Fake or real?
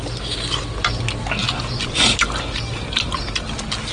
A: real